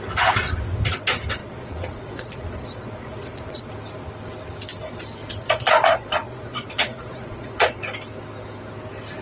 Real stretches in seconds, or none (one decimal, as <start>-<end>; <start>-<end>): 0.0-1.4; 3.7-5.2; 7.8-9.2